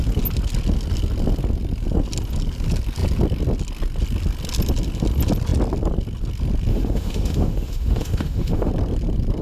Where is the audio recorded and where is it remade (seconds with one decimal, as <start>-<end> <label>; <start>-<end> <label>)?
0.0-6.7 recorded; 6.7-8.7 remade; 8.7-9.4 recorded